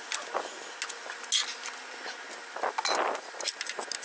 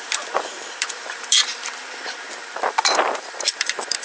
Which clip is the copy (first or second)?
second